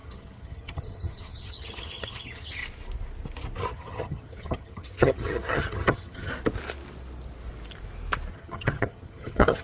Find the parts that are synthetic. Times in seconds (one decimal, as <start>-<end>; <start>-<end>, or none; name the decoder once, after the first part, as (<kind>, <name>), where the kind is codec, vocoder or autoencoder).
0.0-2.6 (vocoder, HiFi-GAN); 3.6-6.3; 8.3-9.6